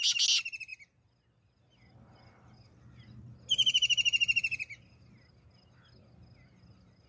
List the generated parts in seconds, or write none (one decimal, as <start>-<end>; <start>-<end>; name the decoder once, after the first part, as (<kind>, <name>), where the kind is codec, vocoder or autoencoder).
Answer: none